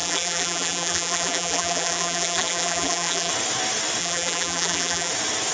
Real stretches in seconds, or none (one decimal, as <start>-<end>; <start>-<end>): 3.3-4.0; 5.1-5.5